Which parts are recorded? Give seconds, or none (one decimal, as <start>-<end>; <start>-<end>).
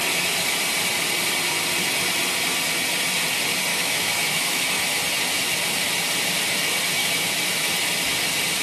0.0-3.7; 5.0-7.0; 7.7-8.6